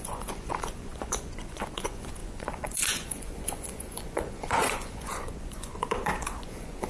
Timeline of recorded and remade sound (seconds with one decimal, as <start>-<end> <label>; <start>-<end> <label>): 0.0-6.9 remade